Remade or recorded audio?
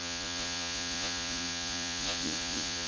remade